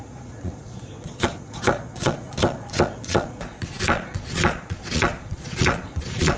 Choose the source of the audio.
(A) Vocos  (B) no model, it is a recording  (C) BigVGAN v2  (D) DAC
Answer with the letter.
A